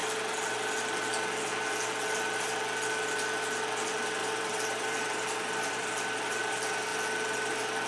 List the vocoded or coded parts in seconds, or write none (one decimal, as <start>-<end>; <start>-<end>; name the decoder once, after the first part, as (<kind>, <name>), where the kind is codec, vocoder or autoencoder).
4.2-6.4 (vocoder, BigVGAN v2)